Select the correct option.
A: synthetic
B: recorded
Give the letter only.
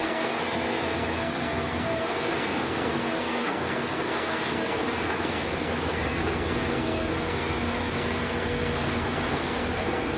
A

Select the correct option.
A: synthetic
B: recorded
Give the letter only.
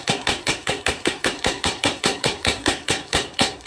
A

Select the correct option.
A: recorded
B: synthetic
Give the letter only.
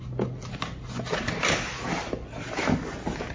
A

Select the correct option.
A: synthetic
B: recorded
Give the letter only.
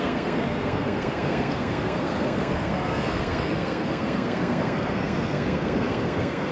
A